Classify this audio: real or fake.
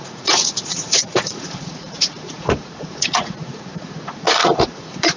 fake